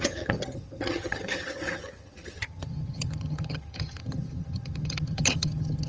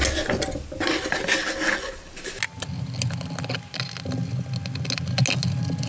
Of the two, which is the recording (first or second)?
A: second